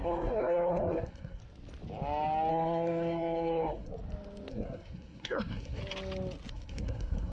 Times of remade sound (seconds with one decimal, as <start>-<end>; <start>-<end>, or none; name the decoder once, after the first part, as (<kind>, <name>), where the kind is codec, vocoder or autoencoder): 0.0-1.4 (codec, SNAC); 2.5-3.9; 4.5-5.8; 6.5-7.3